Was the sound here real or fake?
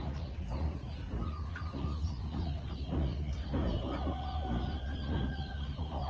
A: fake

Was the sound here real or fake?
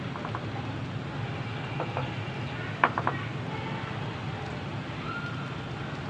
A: real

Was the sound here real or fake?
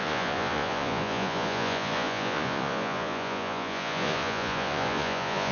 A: fake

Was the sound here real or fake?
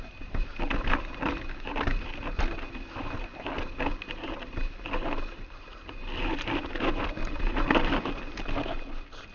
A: real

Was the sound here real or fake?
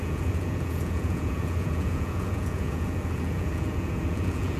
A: fake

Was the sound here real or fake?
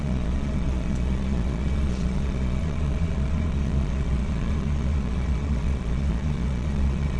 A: fake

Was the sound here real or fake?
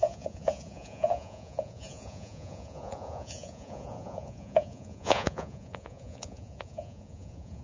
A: fake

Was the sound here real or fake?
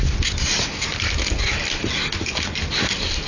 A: real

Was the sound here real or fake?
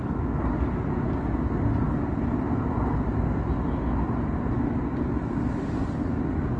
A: real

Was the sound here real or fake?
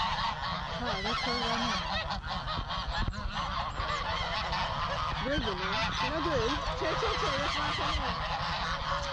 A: real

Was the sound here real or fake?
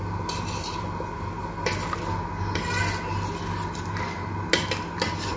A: real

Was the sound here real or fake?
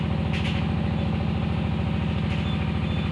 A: real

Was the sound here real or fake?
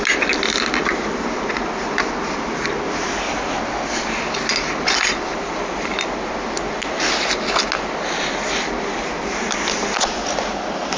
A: real